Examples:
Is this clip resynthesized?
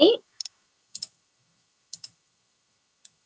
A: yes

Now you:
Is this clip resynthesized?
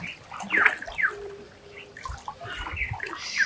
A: yes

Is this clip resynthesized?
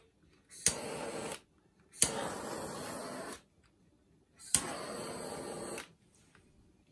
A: no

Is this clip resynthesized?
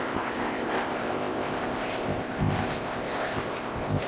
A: yes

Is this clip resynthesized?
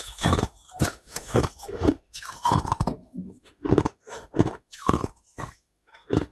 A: yes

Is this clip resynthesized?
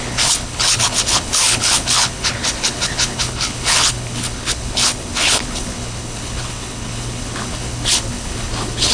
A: yes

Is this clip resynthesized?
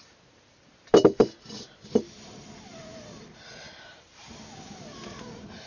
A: no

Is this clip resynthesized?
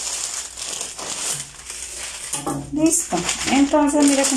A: no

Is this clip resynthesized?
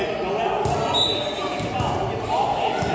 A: no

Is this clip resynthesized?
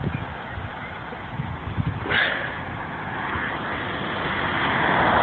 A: no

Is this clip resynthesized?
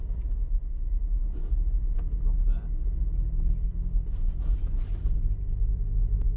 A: no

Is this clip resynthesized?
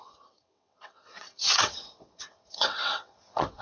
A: yes